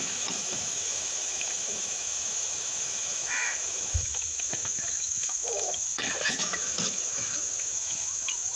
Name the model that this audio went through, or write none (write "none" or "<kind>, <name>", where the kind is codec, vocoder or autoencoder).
autoencoder, DAC-VAE